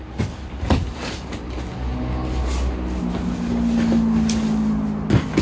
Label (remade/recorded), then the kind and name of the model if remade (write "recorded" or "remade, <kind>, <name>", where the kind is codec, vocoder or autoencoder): recorded